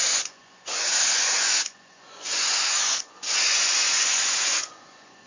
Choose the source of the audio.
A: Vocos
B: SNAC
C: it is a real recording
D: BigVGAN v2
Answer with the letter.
A